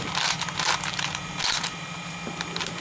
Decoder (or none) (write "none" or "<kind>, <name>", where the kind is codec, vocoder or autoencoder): none